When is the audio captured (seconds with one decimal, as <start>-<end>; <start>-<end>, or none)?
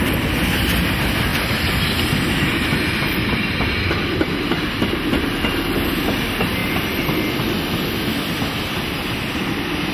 0.0-6.6; 7.3-9.9